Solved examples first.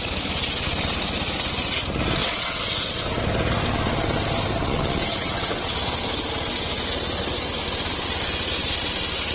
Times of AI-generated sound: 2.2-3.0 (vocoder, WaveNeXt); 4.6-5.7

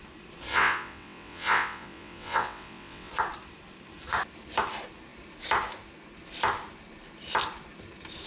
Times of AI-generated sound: 0.5-3.1 (vocoder, WaveNeXt)

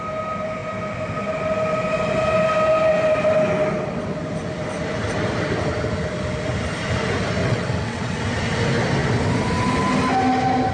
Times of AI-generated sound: 7.4-8.2 (vocoder, WaveNeXt)

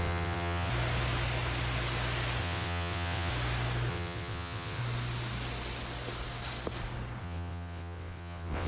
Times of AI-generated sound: 0.0-0.7 (vocoder, WaveNeXt); 2.4-3.3; 3.9-4.8; 7.2-8.7